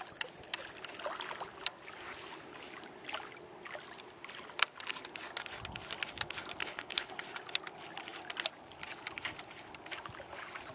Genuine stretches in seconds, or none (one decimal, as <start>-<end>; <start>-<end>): 0.0-6.6; 7.1-10.7